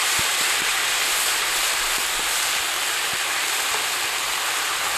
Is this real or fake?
fake